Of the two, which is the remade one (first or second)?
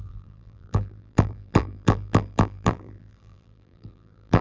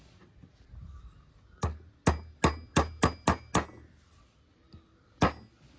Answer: first